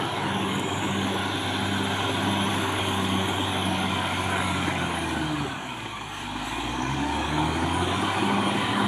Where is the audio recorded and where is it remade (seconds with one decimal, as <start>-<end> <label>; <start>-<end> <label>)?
0.0-1.2 remade; 1.2-2.5 recorded; 2.5-8.9 remade